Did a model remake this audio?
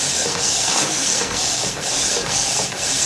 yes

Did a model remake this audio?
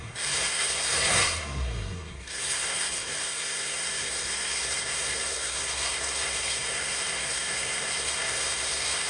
yes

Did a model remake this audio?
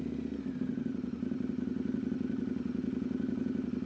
no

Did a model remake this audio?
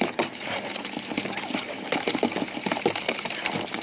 no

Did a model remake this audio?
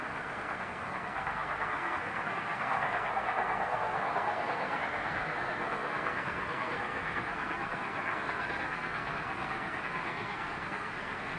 yes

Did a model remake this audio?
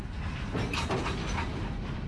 no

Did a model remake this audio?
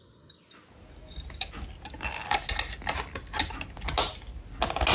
no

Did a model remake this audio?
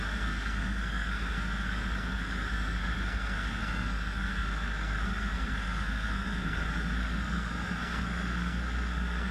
yes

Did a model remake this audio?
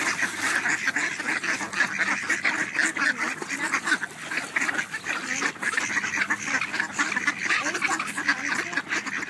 no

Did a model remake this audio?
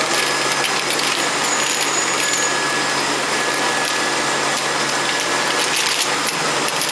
no